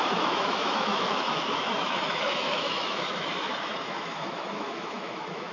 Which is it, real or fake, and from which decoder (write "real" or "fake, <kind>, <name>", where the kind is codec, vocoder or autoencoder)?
fake, autoencoder, DAC-VAE